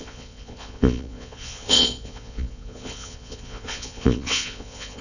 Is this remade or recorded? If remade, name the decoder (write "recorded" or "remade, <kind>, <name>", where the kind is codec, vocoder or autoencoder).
remade, vocoder, Vocos